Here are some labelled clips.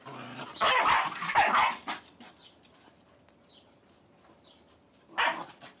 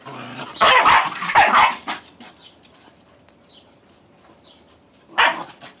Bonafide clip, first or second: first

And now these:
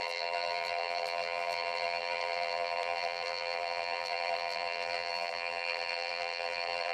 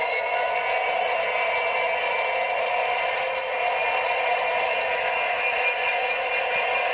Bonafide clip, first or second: second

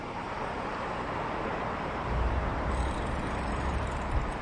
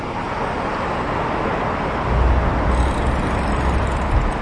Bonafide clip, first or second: second